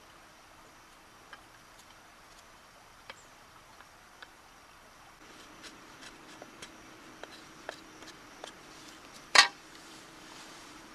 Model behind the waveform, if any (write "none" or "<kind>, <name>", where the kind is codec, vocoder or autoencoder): vocoder, BigVGAN v2